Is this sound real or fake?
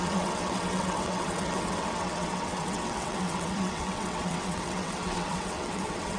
fake